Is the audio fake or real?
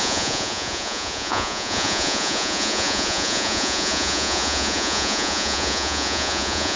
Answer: fake